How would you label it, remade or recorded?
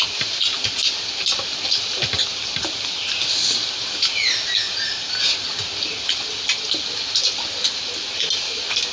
recorded